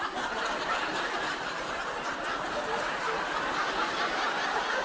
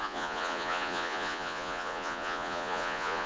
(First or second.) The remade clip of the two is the second